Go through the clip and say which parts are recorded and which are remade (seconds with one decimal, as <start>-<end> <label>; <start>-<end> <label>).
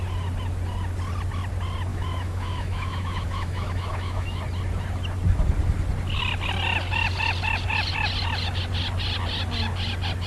0.0-1.9 recorded; 1.9-4.4 remade; 4.4-10.3 recorded